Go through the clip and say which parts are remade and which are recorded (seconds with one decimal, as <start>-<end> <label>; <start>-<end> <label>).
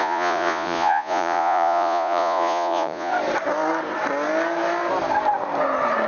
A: 0.0-3.1 remade; 3.1-6.1 recorded